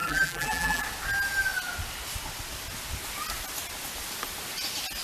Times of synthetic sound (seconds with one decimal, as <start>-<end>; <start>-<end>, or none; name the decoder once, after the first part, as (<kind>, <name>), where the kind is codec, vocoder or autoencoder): 0.0-0.8 (vocoder, BigVGAN v2)